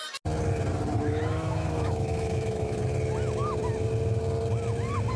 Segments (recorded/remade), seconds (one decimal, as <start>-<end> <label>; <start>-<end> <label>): 0.0-1.3 recorded; 1.3-2.8 remade; 2.8-5.2 recorded